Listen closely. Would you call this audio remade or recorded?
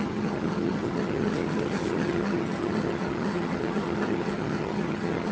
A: remade